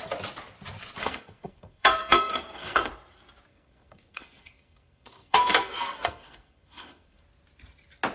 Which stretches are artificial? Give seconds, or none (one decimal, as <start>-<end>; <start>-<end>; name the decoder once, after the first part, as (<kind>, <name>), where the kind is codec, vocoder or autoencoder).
1.0-2.9 (codec, SNAC); 3.5-7.2